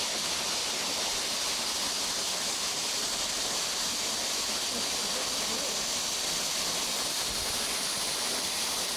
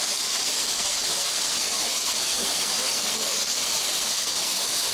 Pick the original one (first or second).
first